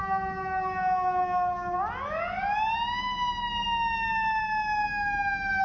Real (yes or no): yes